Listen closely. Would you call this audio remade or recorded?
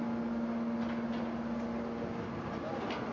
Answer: recorded